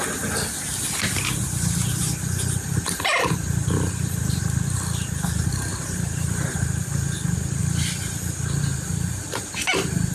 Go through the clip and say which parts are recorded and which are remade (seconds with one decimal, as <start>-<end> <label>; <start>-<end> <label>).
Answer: 0.0-5.7 recorded; 5.7-6.4 remade; 6.4-10.1 recorded